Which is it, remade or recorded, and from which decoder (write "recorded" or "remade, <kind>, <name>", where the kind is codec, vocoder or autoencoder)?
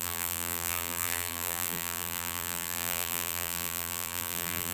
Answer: remade, vocoder, BigVGAN v2